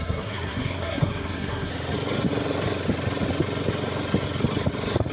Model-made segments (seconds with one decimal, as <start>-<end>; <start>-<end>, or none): 0.0-1.7